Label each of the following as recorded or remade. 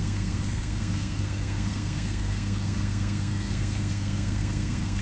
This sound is remade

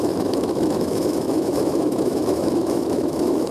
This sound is remade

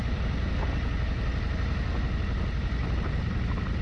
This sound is recorded